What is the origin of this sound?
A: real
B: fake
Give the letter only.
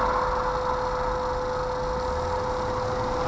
A